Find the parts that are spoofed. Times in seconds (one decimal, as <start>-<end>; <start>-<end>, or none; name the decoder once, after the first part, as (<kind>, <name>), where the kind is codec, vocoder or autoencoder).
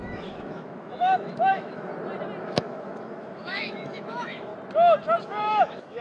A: 0.0-1.9 (autoencoder, DAC-VAE); 2.4-4.5; 5.2-6.0